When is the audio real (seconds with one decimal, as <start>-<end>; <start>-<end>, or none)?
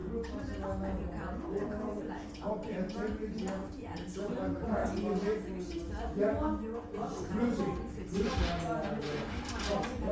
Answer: 0.0-10.1